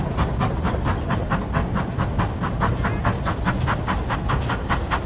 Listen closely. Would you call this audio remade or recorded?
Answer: recorded